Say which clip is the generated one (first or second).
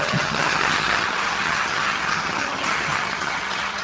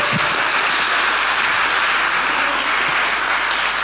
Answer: first